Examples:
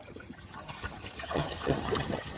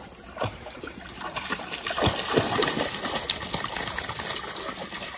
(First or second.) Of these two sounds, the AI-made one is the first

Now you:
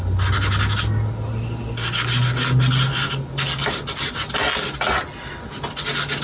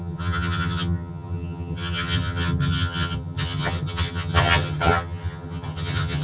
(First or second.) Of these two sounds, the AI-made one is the second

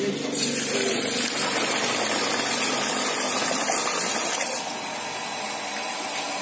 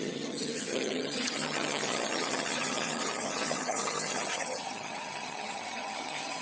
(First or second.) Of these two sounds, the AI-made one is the second